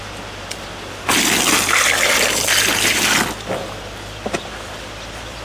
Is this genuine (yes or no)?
yes